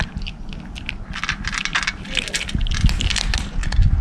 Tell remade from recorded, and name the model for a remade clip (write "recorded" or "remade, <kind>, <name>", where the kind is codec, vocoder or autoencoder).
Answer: recorded